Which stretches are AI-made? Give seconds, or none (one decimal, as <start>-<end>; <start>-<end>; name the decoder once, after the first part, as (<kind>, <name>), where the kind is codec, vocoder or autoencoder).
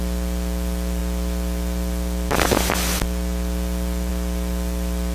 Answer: none